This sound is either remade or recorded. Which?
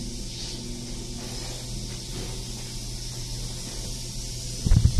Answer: recorded